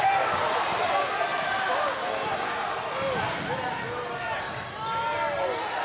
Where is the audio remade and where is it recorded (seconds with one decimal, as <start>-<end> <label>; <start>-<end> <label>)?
0.0-5.8 recorded